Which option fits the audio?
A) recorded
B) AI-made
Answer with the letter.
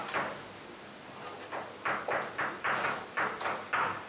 A